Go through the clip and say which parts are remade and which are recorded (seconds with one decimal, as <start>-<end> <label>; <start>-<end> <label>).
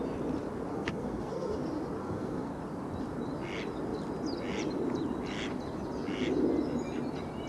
0.0-0.7 recorded; 0.7-1.6 remade; 1.6-2.0 recorded; 2.0-2.5 remade; 2.5-7.5 recorded